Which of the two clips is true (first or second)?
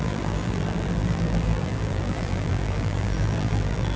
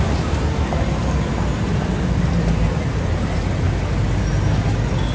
second